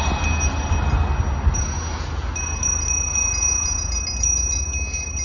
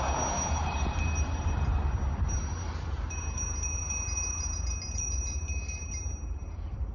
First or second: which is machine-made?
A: second